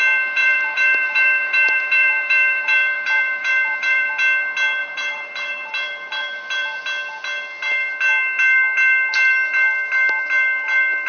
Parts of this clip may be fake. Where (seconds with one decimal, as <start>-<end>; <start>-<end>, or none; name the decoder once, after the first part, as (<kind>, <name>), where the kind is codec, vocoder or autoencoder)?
0.4-4.1 (vocoder, BigVGAN v2); 4.8-6.8